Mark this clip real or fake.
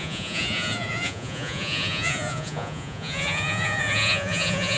fake